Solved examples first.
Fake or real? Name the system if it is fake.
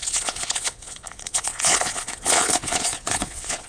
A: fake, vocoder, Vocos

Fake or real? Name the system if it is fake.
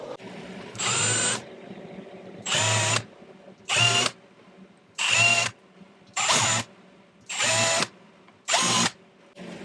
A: real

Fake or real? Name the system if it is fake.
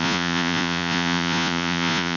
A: fake, vocoder, Vocos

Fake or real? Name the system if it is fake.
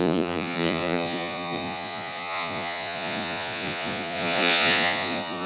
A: fake, vocoder, Vocos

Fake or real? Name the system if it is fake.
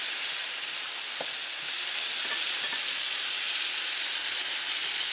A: real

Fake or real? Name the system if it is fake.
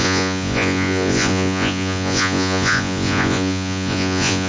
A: fake, vocoder, Vocos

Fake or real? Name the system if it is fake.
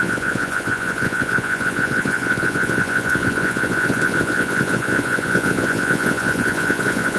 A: fake, vocoder, Vocos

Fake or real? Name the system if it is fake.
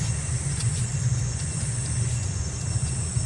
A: fake, vocoder, Vocos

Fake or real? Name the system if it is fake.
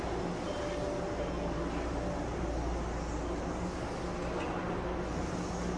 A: real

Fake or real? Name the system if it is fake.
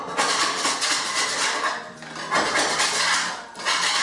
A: real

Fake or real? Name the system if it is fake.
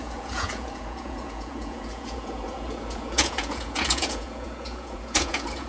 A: fake, vocoder, Vocos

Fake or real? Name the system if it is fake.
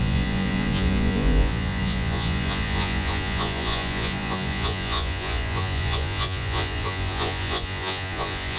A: fake, vocoder, Vocos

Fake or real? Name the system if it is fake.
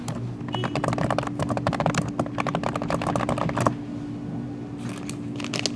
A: real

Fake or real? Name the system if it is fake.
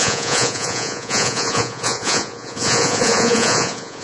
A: fake, vocoder, Vocos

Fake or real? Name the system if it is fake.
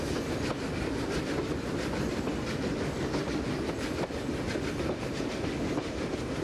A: real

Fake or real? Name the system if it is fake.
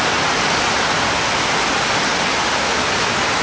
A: real